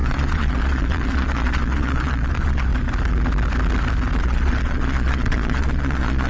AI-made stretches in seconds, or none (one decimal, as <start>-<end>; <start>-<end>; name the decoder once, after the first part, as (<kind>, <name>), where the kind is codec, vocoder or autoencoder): 0.0-2.7 (vocoder, Vocos); 4.2-6.3